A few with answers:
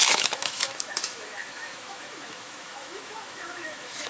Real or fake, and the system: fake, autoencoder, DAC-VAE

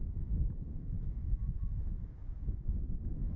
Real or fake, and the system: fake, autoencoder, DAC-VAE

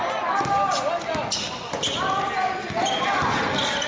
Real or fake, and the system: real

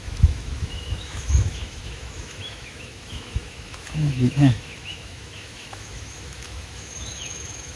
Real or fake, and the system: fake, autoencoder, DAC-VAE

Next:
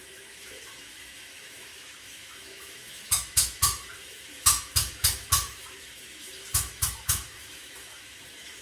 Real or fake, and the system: fake, autoencoder, DAC-VAE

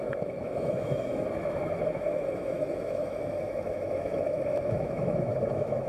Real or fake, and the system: fake, autoencoder, DAC-VAE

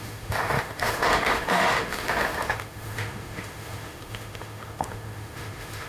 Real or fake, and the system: fake, autoencoder, DAC-VAE